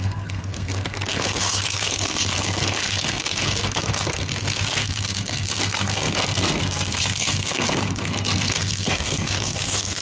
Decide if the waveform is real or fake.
fake